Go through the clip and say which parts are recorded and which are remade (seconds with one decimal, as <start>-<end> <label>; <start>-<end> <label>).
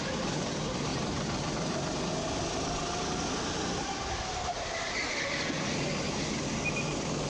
0.0-7.3 recorded